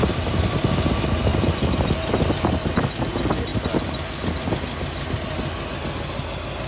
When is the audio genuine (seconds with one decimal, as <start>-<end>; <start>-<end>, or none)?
0.0-6.7

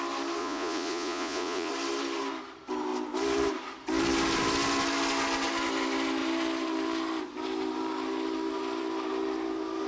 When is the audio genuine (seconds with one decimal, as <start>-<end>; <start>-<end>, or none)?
0.0-0.4; 1.7-9.9